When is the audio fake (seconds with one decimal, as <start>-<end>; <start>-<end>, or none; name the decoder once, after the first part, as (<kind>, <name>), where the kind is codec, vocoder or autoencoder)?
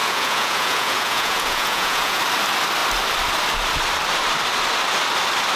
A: 0.0-2.2 (vocoder, Vocos)